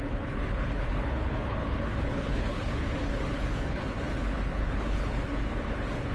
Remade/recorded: remade